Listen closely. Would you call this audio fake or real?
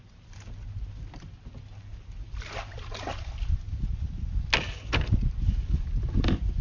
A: real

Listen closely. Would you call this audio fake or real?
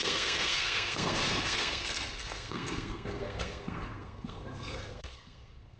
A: fake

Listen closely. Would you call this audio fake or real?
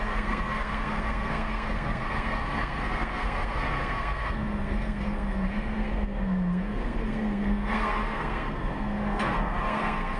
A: fake